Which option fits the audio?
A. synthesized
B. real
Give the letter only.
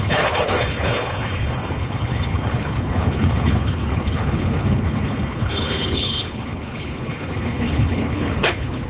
A